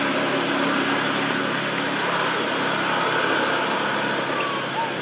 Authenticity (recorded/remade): recorded